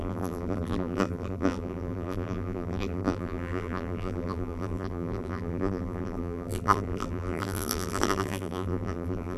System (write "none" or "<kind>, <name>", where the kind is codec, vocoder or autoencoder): vocoder, BigVGAN v2